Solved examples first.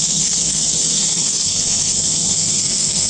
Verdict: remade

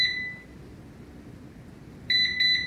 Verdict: recorded